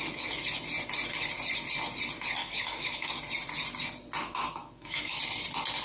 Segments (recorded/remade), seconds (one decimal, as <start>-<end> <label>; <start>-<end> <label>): 0.0-2.4 recorded; 2.4-3.1 remade; 3.1-4.2 recorded; 4.2-5.2 remade; 5.2-5.8 recorded